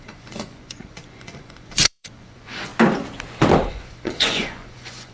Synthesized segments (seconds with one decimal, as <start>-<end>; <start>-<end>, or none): 0.0-2.7; 3.7-5.1